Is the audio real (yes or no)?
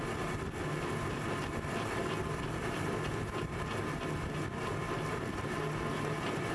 yes